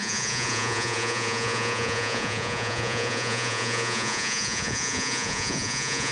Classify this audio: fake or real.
fake